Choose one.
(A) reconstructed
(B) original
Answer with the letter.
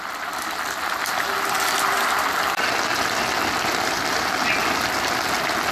B